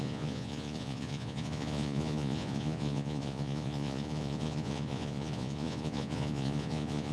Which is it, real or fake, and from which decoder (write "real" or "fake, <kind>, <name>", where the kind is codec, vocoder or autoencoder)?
fake, vocoder, Vocos